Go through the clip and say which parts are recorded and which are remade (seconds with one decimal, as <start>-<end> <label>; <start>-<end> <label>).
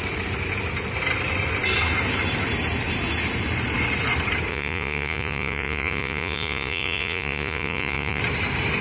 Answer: 0.0-4.5 recorded; 4.5-8.2 remade; 8.2-8.8 recorded